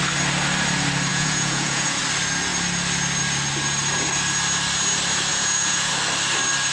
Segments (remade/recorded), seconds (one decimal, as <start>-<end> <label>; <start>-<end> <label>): 0.0-1.1 recorded; 1.1-2.0 remade; 2.0-5.3 recorded; 5.3-5.9 remade; 5.9-6.7 recorded